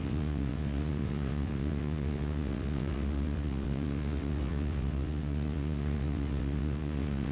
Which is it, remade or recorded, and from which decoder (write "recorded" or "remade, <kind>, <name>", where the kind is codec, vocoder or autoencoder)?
remade, vocoder, WaveNeXt